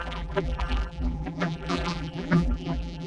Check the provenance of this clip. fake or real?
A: fake